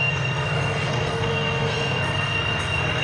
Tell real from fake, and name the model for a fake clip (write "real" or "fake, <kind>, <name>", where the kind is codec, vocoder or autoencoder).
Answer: fake, codec, SNAC